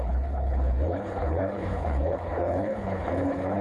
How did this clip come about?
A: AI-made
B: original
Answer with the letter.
A